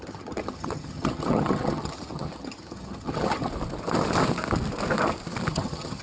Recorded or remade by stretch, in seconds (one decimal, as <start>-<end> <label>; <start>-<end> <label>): 0.0-3.5 remade; 3.5-5.5 recorded; 5.5-6.0 remade